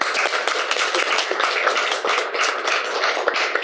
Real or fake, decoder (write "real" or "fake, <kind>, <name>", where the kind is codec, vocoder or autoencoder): real